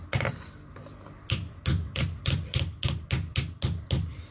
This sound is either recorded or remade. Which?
recorded